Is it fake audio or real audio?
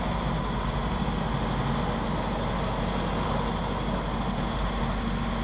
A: real